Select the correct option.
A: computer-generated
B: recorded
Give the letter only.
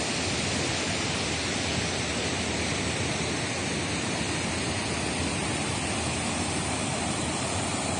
B